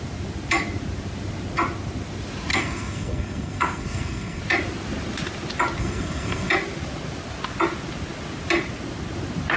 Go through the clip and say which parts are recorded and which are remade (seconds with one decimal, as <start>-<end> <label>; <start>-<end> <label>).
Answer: 0.0-2.5 recorded; 2.5-4.4 remade; 4.4-5.8 recorded; 5.8-6.5 remade; 6.5-9.6 recorded